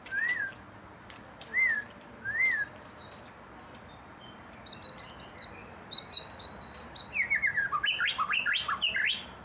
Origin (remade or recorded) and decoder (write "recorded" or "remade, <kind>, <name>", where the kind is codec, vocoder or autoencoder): remade, vocoder, BigVGAN v2